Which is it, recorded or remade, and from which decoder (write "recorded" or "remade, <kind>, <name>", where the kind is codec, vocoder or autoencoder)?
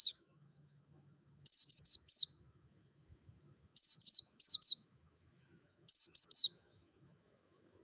remade, autoencoder, DAC-VAE